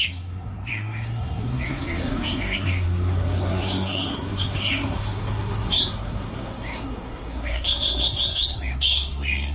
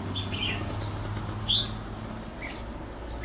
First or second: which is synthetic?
first